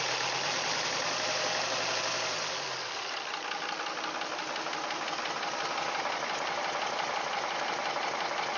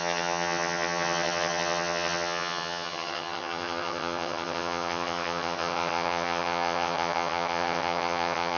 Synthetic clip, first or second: second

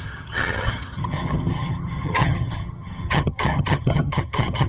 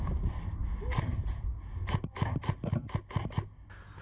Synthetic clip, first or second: first